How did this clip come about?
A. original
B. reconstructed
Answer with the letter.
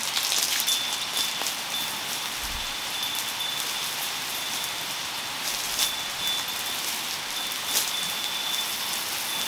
A